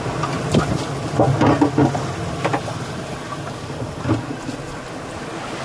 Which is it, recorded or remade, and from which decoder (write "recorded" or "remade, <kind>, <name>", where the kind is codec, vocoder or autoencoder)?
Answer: recorded